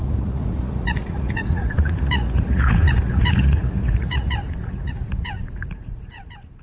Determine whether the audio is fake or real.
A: fake